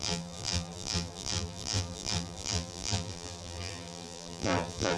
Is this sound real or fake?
fake